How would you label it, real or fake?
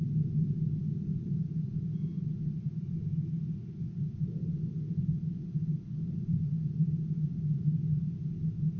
real